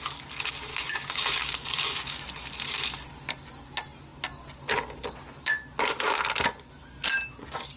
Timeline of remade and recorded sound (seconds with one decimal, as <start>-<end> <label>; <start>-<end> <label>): 0.0-0.7 recorded; 0.7-2.2 remade; 2.2-7.8 recorded